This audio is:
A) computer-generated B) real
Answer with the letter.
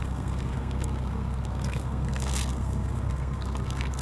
A